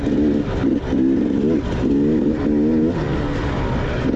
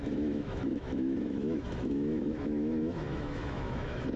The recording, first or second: first